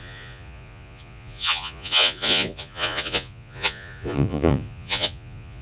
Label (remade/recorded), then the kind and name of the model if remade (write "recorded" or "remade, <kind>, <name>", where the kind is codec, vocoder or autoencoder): remade, vocoder, Vocos